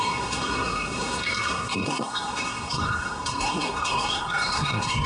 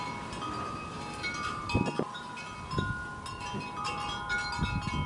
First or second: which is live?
second